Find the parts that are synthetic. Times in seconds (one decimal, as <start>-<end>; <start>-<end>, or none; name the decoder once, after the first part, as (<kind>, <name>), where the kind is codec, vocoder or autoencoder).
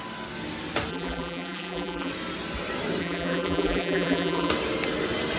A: 0.9-2.1 (vocoder, BigVGAN v2); 3.0-4.5